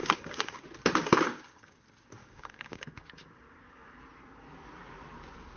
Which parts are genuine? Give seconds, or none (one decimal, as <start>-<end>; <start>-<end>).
0.6-1.0; 1.8-2.2; 4.0-5.6